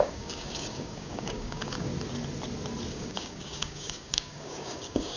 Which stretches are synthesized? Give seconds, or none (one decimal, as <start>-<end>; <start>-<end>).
0.0-1.9; 2.9-5.2